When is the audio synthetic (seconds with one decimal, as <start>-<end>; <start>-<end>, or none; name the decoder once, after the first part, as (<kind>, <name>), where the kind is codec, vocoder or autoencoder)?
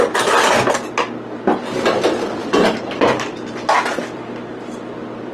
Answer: 2.4-5.3 (vocoder, BigVGAN v2)